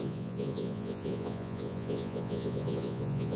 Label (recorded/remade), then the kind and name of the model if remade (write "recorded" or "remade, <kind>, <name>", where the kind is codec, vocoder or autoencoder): remade, vocoder, Vocos